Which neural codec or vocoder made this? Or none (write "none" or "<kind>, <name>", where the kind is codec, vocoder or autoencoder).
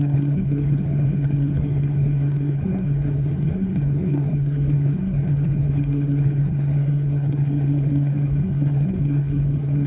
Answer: codec, SNAC